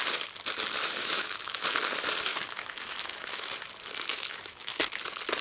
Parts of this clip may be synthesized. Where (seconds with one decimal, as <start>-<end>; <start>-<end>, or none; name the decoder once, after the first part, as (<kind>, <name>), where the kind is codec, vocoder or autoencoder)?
1.0-1.6 (autoencoder, DAC-VAE); 2.3-3.5; 4.1-4.8